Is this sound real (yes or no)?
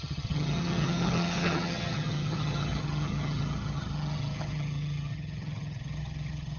no